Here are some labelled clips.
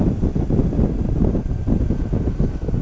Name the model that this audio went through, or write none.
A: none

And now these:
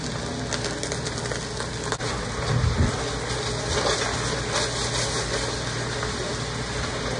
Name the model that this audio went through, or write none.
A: none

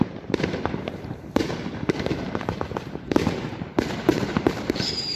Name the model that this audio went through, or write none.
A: vocoder, BigVGAN v2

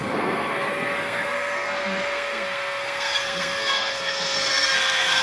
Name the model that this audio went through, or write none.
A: codec, SNAC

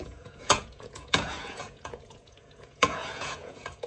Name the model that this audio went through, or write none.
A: vocoder, Vocos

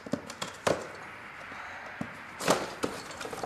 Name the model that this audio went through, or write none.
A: none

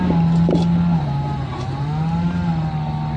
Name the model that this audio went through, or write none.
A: none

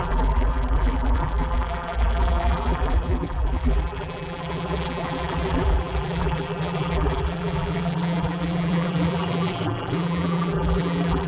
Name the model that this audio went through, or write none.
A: vocoder, BigVGAN v2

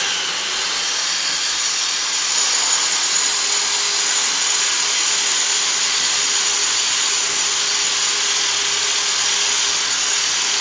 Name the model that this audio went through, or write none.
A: none